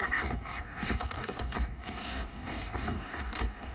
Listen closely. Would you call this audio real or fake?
fake